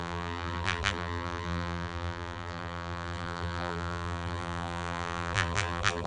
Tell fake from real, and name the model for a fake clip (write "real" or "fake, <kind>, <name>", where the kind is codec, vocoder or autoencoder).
fake, vocoder, BigVGAN v2